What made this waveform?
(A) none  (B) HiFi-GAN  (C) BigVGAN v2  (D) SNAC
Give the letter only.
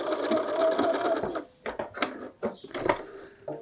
A